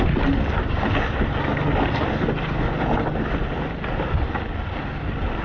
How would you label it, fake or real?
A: real